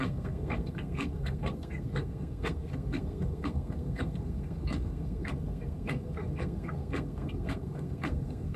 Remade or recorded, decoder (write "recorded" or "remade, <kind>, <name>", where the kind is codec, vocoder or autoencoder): remade, codec, SNAC